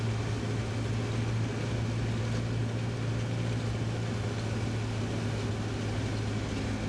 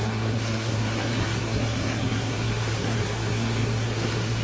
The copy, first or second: second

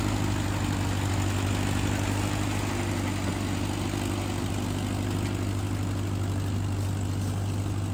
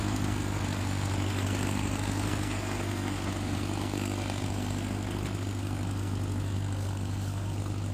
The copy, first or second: second